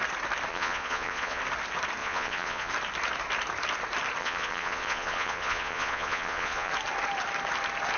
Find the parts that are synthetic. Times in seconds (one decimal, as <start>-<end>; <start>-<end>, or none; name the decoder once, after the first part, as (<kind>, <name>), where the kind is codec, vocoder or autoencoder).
0.5-1.4 (vocoder, Vocos); 2.0-2.7; 4.2-6.7

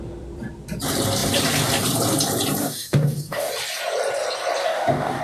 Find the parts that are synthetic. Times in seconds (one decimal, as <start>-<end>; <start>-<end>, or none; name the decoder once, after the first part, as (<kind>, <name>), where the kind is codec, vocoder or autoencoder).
2.6-3.5 (codec, DAC); 4.6-5.2

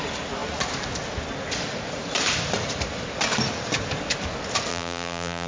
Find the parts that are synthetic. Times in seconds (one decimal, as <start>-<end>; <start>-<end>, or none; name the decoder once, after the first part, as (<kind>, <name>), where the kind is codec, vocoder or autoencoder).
4.7-5.5 (vocoder, BigVGAN v2)

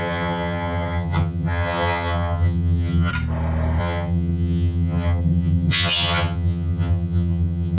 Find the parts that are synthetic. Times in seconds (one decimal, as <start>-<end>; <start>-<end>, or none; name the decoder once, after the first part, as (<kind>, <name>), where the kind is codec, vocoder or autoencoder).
0.0-3.1 (vocoder, HiFi-GAN); 3.8-7.8

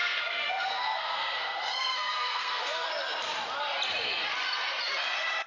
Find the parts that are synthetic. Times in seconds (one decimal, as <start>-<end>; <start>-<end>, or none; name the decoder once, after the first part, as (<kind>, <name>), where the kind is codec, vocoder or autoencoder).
0.0-2.9 (codec, SNAC)

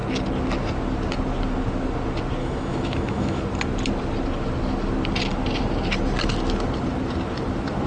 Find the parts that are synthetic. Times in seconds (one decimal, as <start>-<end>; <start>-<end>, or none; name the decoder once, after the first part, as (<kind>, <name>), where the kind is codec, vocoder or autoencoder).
2.4-3.4 (autoencoder, DAC-VAE)